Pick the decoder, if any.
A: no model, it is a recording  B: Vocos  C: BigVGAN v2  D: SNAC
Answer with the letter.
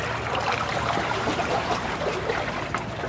A